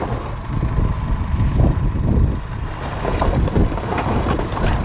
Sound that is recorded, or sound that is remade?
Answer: recorded